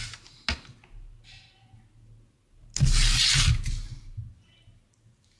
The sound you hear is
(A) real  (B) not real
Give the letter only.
A